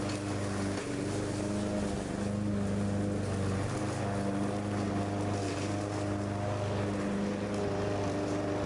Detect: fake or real real